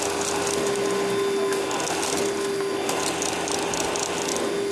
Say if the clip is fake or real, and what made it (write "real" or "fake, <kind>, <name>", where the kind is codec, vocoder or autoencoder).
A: real